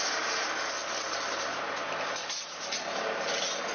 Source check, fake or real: real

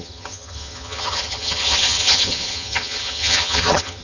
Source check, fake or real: fake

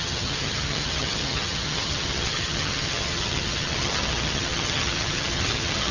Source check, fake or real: fake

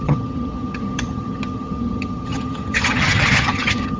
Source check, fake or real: fake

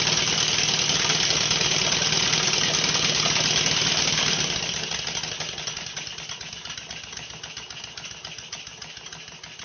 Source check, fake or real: real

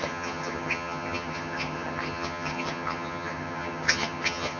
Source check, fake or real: fake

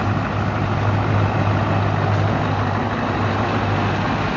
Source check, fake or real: real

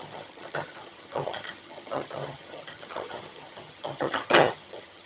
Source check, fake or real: fake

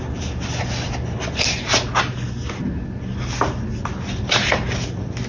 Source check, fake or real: real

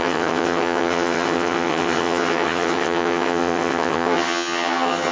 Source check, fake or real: fake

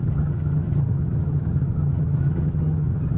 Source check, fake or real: fake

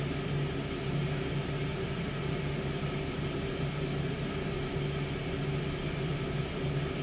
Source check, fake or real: real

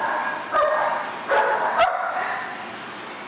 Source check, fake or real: real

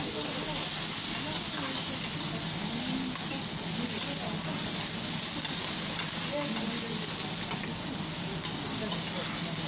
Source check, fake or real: real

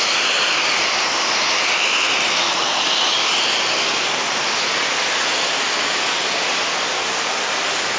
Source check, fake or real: real